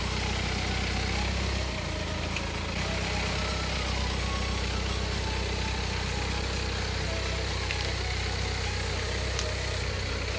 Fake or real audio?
real